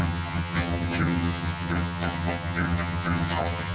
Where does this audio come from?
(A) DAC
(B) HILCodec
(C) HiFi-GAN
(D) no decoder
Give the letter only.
C